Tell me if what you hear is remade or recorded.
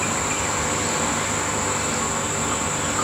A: recorded